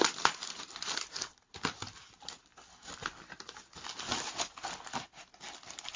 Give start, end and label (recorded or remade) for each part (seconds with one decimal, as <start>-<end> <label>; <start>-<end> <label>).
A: 0.0-6.0 recorded